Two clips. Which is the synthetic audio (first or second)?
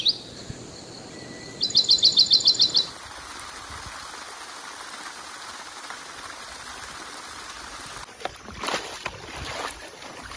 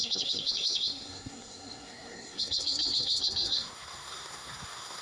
second